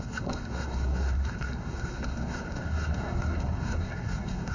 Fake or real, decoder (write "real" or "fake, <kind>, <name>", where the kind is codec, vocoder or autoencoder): fake, codec, SNAC